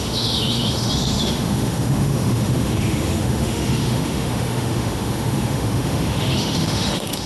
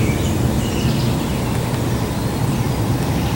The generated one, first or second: first